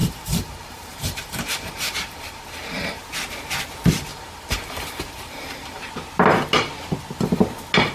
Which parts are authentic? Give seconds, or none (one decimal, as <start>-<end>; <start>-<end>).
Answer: 3.0-4.1; 5.9-7.9